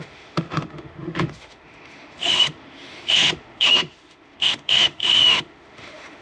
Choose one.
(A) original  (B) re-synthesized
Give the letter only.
B